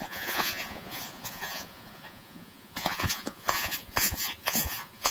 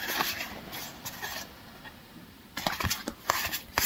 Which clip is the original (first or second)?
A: second